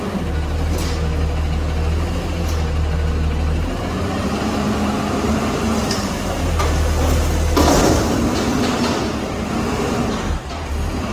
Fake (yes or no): no